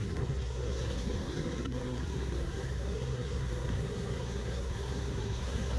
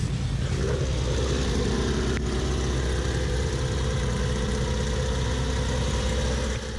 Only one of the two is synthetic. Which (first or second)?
first